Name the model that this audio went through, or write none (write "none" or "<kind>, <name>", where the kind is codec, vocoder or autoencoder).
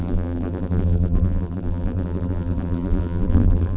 vocoder, BigVGAN v2